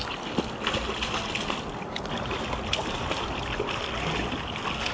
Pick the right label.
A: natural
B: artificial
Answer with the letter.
A